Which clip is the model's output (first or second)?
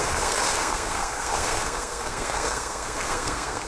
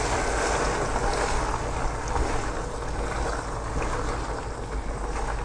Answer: first